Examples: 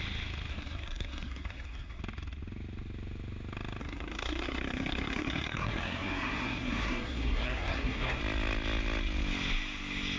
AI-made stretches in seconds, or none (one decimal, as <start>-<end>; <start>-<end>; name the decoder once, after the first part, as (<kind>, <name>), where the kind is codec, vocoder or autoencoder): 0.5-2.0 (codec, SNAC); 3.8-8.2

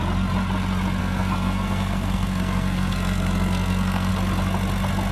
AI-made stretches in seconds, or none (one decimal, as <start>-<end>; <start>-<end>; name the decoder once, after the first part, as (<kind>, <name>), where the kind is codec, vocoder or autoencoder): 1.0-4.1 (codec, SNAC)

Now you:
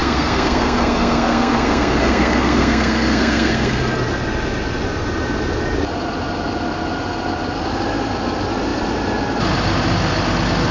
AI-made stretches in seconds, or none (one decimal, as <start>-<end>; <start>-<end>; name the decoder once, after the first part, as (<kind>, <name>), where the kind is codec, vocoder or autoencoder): 0.0-3.8 (codec, SNAC)